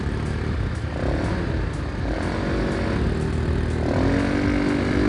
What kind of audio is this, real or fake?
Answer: real